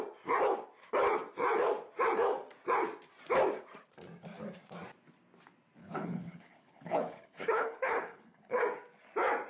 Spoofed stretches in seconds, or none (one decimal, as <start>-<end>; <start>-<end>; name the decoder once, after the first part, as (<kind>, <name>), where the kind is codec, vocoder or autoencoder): 5.8-8.6 (codec, HILCodec)